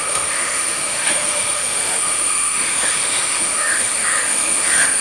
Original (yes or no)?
no